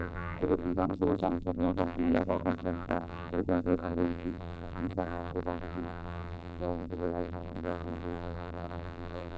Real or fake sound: fake